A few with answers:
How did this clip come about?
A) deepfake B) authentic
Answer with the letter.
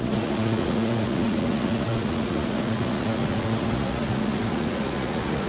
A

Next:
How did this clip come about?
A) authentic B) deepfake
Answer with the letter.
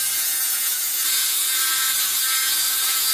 B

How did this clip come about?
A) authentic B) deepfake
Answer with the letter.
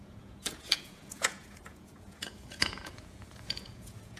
B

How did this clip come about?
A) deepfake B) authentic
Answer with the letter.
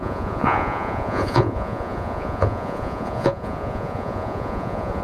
A